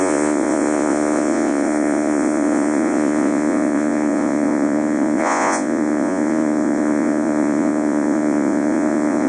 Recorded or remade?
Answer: remade